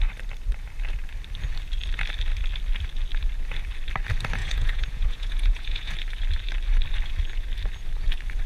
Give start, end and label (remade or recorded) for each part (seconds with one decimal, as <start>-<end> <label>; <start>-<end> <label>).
0.0-4.4 recorded; 4.4-5.9 remade; 5.9-8.5 recorded